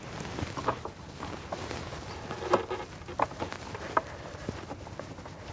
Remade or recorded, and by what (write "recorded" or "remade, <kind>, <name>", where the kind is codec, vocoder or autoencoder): recorded